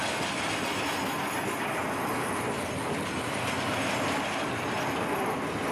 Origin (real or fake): real